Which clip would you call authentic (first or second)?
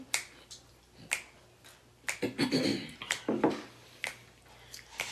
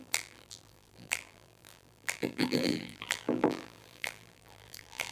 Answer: first